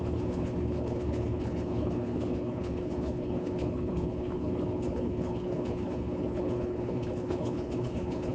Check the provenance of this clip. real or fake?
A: fake